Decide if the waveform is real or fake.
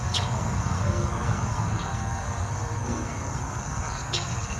fake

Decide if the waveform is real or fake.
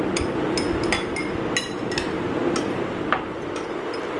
real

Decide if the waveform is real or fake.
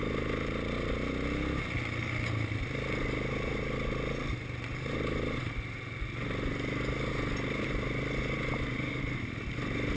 real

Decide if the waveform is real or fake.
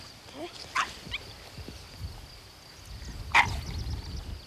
real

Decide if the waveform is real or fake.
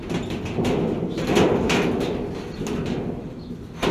real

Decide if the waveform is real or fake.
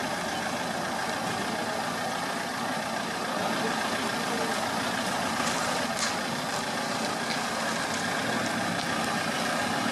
real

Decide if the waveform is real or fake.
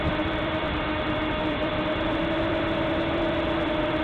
fake